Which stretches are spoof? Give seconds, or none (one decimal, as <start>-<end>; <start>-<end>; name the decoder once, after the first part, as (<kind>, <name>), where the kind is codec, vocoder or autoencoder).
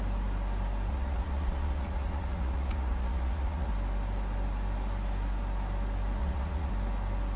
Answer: 0.9-3.7 (vocoder, Vocos); 6.2-6.7